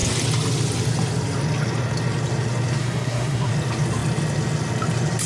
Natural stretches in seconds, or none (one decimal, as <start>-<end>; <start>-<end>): 0.0-2.8; 3.5-5.3